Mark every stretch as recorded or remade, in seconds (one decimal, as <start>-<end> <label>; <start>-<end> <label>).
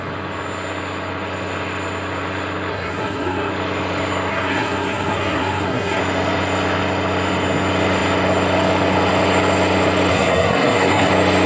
0.0-2.7 recorded; 2.7-3.5 remade; 3.5-4.3 recorded; 4.3-6.0 remade; 6.0-10.1 recorded; 10.1-11.1 remade; 11.1-11.5 recorded